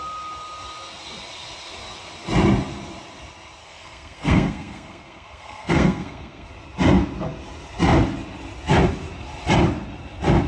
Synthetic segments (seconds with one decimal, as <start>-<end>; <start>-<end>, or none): 3.6-6.5